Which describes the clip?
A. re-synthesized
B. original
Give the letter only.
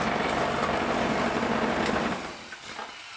B